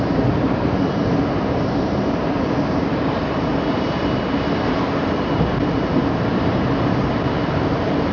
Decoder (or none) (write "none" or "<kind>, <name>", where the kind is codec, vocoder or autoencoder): vocoder, BigVGAN v2